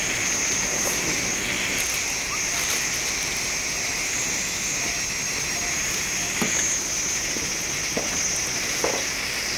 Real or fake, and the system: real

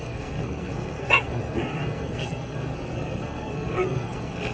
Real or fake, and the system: fake, codec, SNAC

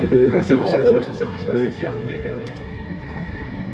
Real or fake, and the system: fake, codec, SNAC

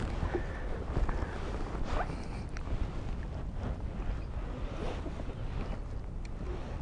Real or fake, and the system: real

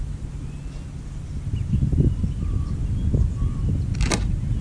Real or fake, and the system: real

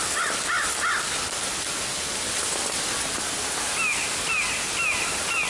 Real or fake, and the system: real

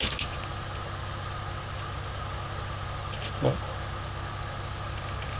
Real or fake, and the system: real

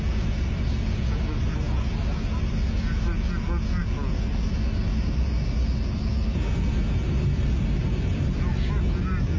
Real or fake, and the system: real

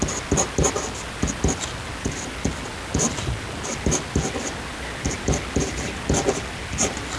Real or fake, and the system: real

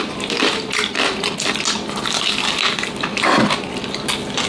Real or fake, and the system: real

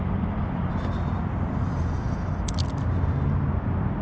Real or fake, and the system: real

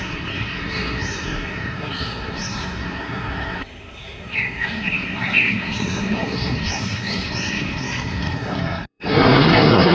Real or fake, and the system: fake, codec, SNAC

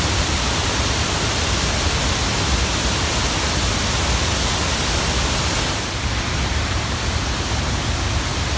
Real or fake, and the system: real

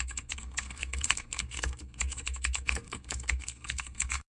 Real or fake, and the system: fake, codec, SNAC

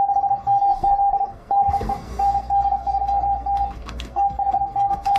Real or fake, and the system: fake, codec, SNAC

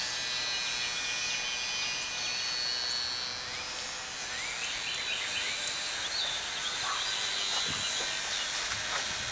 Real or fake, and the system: real